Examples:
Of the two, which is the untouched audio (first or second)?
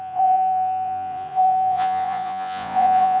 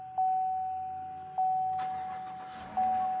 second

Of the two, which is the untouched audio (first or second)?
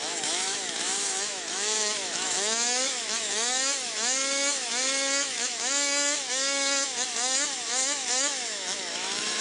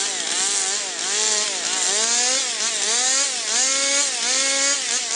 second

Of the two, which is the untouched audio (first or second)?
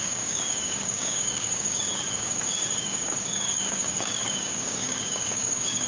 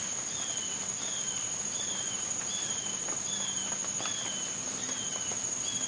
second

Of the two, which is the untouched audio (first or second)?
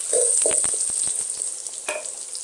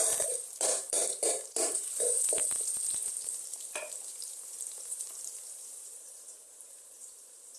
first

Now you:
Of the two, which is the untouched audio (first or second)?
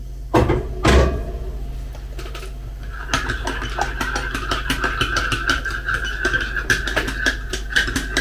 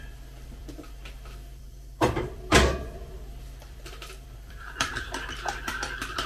first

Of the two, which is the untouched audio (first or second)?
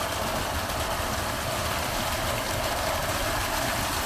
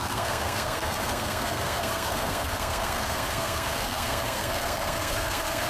first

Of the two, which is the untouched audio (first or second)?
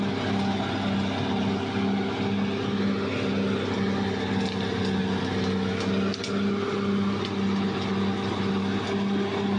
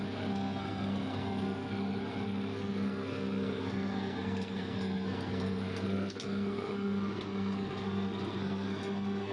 first